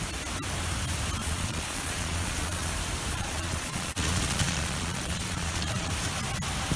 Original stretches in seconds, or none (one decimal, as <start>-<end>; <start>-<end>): 0.0-1.2; 2.7-3.1; 5.9-6.8